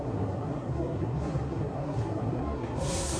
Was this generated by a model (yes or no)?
yes